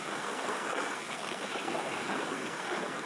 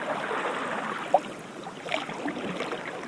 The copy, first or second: first